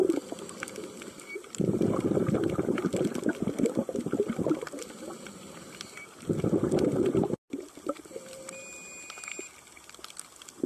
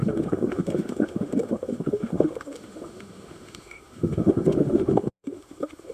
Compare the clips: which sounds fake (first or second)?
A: second